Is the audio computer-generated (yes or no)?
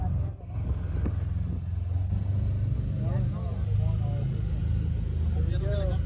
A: no